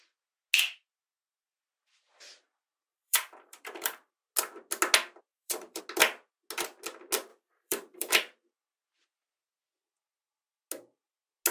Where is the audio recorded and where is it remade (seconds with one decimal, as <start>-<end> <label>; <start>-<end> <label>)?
0.0-2.9 recorded; 2.9-4.1 remade; 4.1-5.3 recorded; 5.3-5.8 remade; 5.8-7.3 recorded; 7.3-8.1 remade; 8.1-11.5 recorded